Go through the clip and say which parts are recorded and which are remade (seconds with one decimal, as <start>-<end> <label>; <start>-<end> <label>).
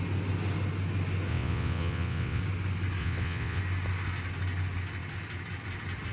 0.0-1.3 recorded; 1.3-2.4 remade; 2.4-3.0 recorded; 3.0-3.6 remade; 3.6-6.1 recorded